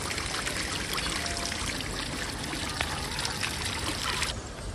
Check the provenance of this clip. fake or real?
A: real